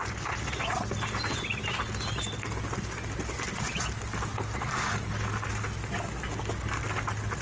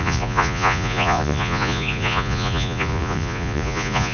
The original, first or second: first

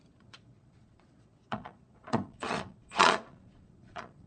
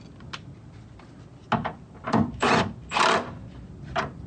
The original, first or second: second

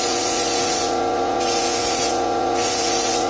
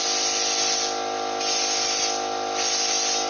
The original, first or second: second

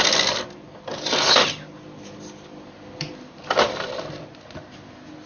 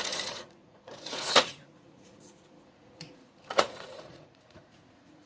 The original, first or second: first